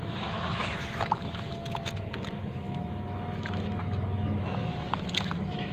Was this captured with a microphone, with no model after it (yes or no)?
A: no